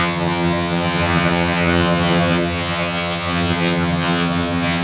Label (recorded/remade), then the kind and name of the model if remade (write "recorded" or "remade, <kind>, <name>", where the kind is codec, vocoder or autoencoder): remade, vocoder, HiFi-GAN